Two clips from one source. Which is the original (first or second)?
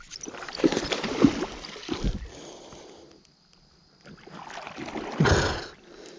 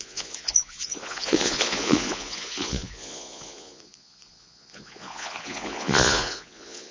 first